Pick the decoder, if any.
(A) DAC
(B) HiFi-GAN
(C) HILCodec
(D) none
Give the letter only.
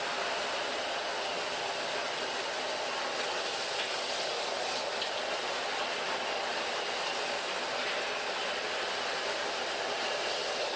D